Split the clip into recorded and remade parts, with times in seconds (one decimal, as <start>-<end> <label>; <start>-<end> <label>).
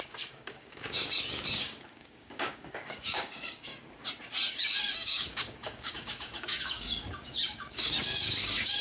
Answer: 0.0-3.7 remade; 3.7-4.5 recorded; 4.5-8.8 remade